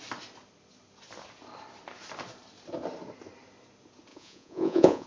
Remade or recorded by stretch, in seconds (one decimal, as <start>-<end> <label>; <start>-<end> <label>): 0.0-4.1 recorded; 4.1-5.1 remade